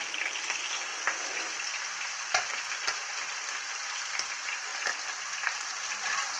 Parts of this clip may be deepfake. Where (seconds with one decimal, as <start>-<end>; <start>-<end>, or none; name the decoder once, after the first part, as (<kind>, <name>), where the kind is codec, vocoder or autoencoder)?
0.0-0.9 (vocoder, BigVGAN v2); 4.3-4.7; 5.2-6.4